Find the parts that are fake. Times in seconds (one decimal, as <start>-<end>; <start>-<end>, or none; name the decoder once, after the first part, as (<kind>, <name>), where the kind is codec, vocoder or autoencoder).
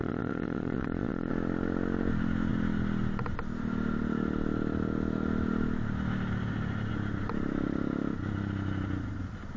0.0-1.3 (vocoder, Vocos)